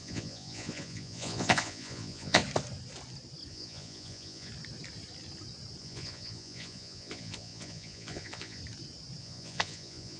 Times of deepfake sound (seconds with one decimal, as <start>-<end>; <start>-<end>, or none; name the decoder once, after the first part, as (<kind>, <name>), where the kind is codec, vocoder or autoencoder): 0.0-2.4 (vocoder, Vocos); 3.5-4.5; 5.8-8.6; 9.2-10.2

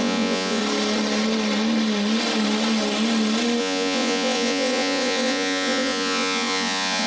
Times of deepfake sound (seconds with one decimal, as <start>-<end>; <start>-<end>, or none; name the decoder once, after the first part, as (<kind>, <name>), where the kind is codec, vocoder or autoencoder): 0.0-0.6 (vocoder, Vocos); 3.6-7.1

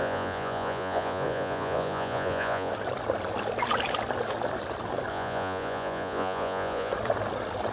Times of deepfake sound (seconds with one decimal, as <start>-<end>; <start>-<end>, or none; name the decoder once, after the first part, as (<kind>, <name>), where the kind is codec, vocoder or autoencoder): 0.0-2.7 (vocoder, Vocos); 5.1-6.9

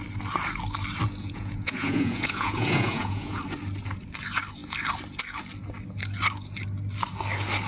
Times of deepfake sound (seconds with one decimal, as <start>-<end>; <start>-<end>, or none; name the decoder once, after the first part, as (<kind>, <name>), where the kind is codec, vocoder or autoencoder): 1.2-3.4 (vocoder, Vocos)

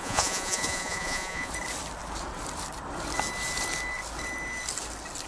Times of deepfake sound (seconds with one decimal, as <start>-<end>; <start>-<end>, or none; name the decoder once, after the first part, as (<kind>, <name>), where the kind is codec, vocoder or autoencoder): 0.0-1.5 (vocoder, Vocos)